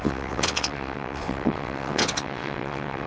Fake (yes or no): yes